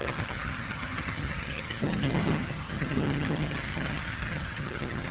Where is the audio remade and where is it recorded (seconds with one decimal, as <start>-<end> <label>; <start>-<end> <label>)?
0.0-5.1 remade